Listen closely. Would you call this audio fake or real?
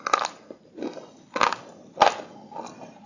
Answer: real